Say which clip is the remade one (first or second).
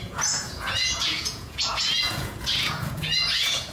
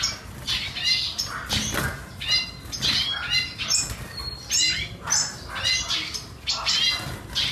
first